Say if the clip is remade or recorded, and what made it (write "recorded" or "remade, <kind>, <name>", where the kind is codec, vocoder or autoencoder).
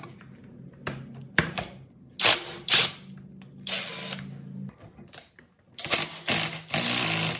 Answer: recorded